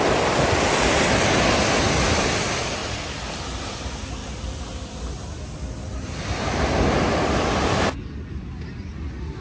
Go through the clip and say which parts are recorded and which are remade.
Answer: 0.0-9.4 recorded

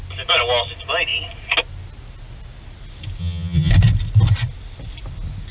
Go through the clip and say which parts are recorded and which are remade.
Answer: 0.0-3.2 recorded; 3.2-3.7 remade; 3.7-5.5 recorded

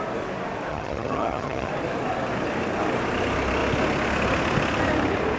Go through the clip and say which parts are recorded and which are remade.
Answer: 0.0-0.7 recorded; 0.7-1.7 remade; 1.7-5.4 recorded

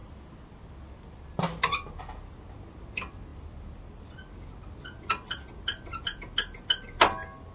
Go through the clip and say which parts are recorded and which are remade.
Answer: 0.0-7.5 recorded

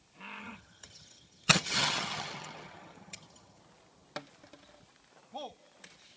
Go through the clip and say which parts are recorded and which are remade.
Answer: 0.0-0.4 recorded; 0.4-3.6 remade; 3.6-6.2 recorded